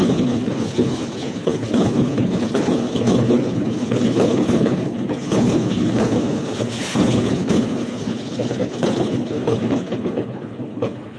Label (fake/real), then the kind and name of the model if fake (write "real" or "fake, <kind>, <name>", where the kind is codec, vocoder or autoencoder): fake, codec, HILCodec